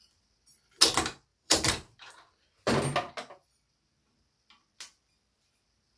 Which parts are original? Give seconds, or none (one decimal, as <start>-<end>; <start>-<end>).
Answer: 0.0-1.3; 2.1-6.0